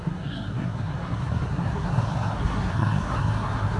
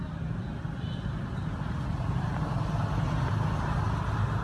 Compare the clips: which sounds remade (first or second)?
first